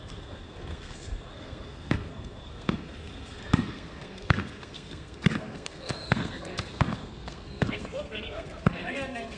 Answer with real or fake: fake